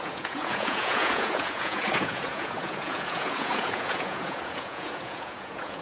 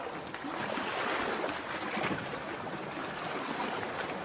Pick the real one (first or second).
second